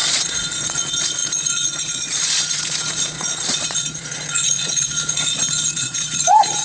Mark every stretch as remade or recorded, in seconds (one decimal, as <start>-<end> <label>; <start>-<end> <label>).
0.0-6.6 remade

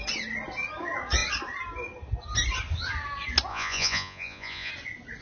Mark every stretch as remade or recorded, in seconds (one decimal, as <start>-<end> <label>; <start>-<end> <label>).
0.0-3.5 recorded; 3.5-4.7 remade; 4.7-5.2 recorded

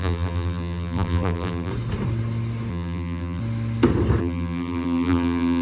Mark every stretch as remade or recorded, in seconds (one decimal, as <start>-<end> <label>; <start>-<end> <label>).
0.0-1.7 remade; 1.7-2.7 recorded; 2.7-3.4 remade; 3.4-4.2 recorded; 4.2-5.6 remade

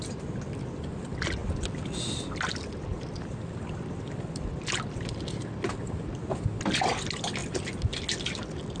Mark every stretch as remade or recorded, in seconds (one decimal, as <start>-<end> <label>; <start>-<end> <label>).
0.0-8.8 recorded